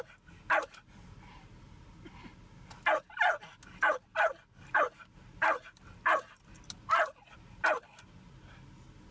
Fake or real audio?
real